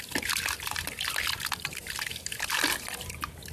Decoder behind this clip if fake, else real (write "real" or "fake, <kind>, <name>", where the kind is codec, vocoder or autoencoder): real